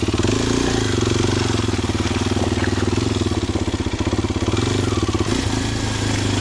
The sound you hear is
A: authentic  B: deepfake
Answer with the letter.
A